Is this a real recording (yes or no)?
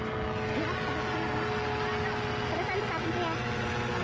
yes